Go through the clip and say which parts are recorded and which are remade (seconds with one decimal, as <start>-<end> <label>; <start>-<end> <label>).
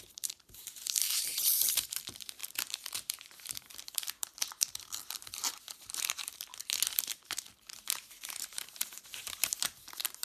0.0-6.5 remade; 6.5-7.3 recorded; 7.3-10.2 remade